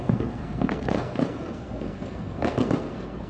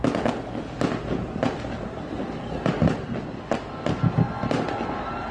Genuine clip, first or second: second